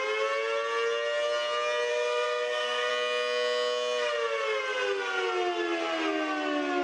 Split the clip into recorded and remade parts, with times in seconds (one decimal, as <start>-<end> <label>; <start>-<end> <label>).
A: 0.0-1.9 recorded; 1.9-2.9 remade; 2.9-6.8 recorded